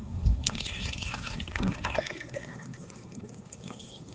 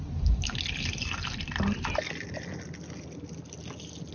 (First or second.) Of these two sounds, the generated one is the first